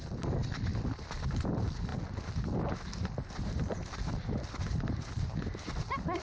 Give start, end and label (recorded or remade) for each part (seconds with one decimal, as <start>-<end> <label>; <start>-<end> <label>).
0.0-1.9 remade; 1.9-3.3 recorded; 3.3-6.2 remade